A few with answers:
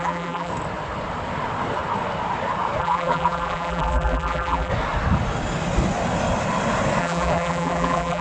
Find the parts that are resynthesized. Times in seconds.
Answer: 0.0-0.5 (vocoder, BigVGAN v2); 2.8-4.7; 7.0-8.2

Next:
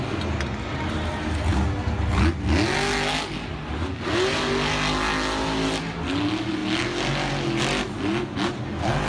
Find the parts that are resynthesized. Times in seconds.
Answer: none

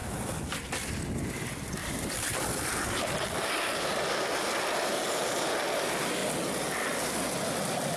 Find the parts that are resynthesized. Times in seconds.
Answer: 0.6-6.2 (vocoder, BigVGAN v2); 7.4-8.0